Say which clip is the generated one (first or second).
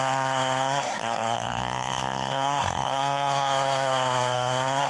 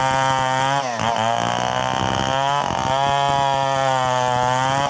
first